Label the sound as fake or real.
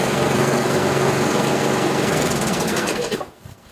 fake